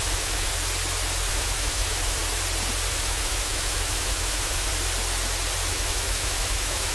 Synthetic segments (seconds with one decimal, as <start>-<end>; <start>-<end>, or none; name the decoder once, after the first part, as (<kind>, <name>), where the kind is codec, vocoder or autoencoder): 0.0-0.5 (autoencoder, DAC-VAE); 1.3-2.2; 2.9-4.7; 5.7-6.9